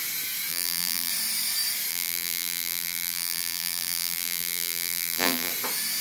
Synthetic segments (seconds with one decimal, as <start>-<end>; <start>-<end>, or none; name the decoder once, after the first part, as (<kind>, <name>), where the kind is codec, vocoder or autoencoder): 0.5-1.1 (vocoder, BigVGAN v2); 1.9-5.5